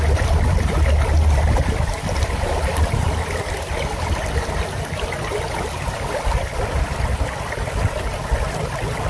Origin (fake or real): real